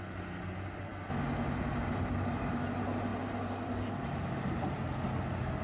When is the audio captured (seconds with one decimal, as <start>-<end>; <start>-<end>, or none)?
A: 0.0-5.6

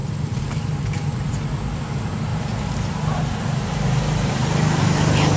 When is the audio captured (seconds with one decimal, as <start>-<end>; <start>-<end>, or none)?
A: 1.3-2.3; 4.8-5.4

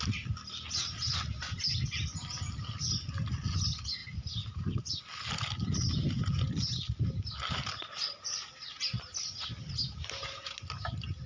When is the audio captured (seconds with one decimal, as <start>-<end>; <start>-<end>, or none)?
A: 0.0-4.0; 5.0-11.3

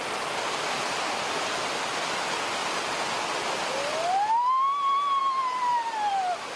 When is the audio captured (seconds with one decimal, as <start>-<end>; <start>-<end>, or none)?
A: 0.0-6.6

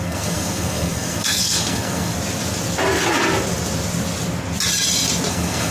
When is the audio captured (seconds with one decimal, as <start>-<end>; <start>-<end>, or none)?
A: 2.1-5.3

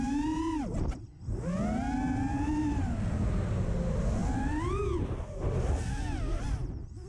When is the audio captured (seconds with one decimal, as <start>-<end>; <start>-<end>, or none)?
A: 0.0-7.1